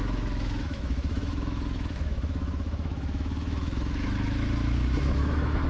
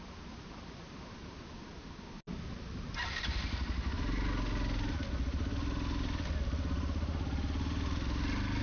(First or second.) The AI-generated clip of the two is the first